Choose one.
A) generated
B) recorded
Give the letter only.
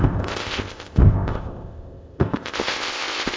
A